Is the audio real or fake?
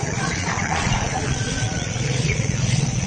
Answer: fake